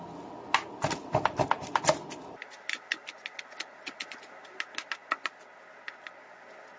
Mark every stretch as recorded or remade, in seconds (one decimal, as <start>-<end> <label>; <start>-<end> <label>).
0.0-6.8 recorded